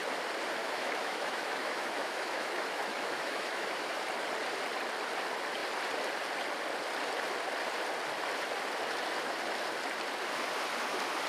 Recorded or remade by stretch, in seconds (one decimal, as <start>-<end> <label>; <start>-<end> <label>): 0.0-0.6 recorded; 0.6-4.0 remade; 4.0-11.3 recorded